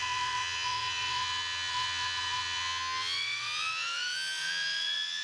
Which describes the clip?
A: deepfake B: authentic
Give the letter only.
A